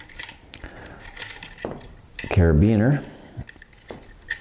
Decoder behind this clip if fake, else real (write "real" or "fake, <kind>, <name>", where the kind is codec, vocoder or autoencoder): real